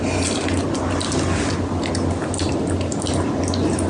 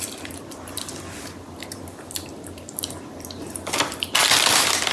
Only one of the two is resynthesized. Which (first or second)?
second